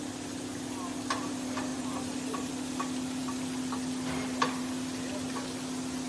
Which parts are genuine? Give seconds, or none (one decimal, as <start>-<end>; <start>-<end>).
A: 0.0-1.7; 2.5-6.1